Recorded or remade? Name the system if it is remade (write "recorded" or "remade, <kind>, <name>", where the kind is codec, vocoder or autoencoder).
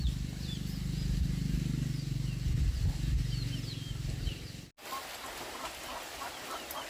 recorded